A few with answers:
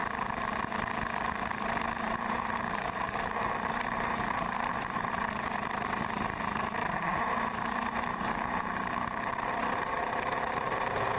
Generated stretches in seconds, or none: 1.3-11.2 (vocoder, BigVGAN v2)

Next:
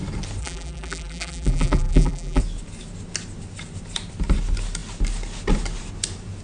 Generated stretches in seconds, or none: 0.4-2.4 (vocoder, BigVGAN v2)

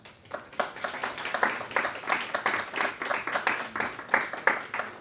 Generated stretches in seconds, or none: none

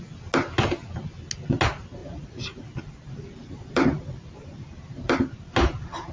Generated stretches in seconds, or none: 2.0-6.1 (vocoder, BigVGAN v2)

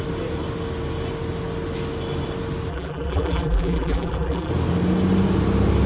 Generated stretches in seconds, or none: 2.7-4.5 (vocoder, BigVGAN v2)

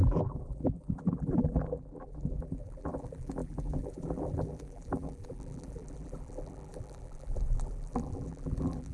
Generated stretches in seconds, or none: 0.0-8.9 (vocoder, BigVGAN v2)

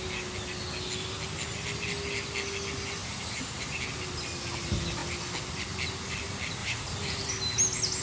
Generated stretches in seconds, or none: 3.0-3.8 (vocoder, BigVGAN v2); 6.6-7.3